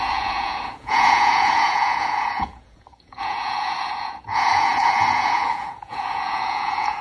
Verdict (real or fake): fake